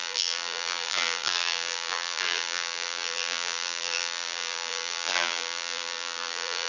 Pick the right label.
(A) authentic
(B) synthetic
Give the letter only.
B